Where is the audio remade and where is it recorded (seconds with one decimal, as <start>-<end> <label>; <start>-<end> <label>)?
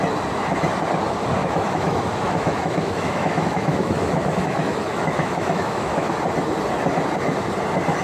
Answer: 0.0-1.4 recorded; 1.4-6.1 remade; 6.1-8.0 recorded